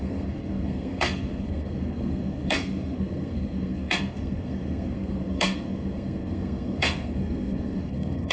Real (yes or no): no